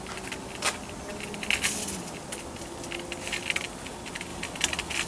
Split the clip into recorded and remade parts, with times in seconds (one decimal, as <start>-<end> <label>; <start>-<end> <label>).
0.0-5.1 recorded